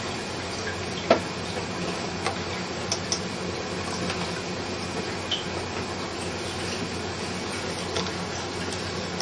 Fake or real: real